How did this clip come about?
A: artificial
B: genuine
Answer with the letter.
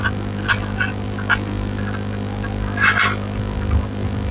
B